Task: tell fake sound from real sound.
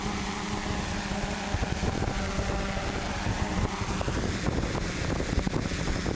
real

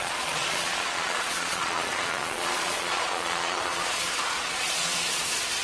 fake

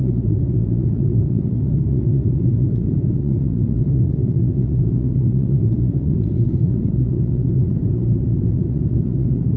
fake